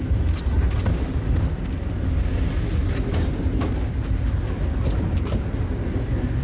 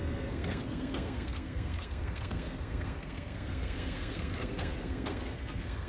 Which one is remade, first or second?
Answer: second